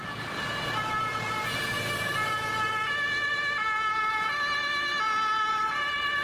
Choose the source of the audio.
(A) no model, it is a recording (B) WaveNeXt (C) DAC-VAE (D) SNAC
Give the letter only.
A